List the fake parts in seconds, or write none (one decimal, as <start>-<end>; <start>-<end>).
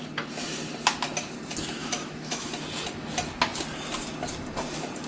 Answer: 1.8-2.5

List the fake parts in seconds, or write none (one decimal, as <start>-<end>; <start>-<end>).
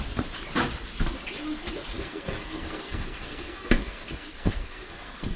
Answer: 1.9-5.4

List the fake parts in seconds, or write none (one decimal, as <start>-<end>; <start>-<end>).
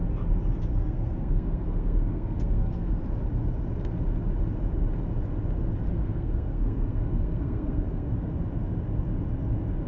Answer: 0.7-2.9; 5.9-8.3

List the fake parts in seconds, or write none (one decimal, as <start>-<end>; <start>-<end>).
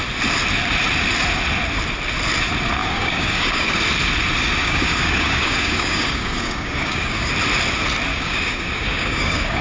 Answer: 2.8-3.8; 4.6-7.3; 8.1-9.6